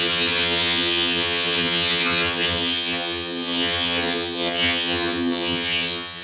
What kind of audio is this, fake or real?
fake